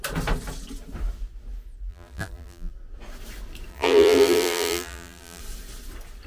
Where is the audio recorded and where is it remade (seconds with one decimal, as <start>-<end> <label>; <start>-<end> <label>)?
0.0-1.9 recorded; 1.9-2.7 remade; 2.7-3.7 recorded; 3.7-5.4 remade; 5.4-6.3 recorded